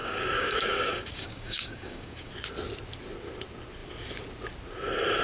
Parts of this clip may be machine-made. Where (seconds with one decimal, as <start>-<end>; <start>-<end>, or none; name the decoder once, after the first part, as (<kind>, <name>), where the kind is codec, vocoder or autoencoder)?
0.0-2.3 (codec, DAC)